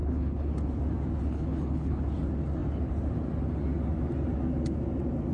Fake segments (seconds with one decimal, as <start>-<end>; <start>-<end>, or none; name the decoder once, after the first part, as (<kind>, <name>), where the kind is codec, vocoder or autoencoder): 0.0-0.5 (codec, HILCodec); 1.3-2.0